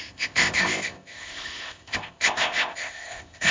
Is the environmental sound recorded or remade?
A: remade